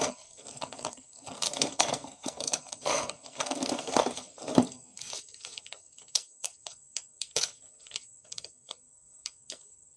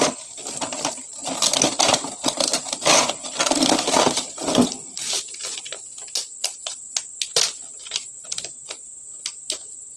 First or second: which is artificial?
first